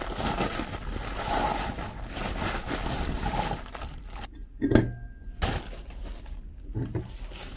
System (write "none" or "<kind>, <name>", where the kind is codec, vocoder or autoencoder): none